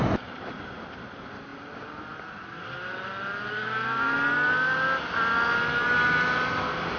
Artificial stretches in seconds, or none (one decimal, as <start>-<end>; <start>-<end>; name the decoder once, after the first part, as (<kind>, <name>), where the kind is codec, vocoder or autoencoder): none